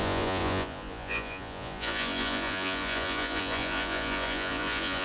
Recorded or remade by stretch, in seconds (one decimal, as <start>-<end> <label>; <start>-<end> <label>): 0.0-5.0 remade